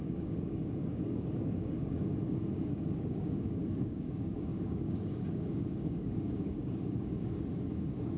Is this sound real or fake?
fake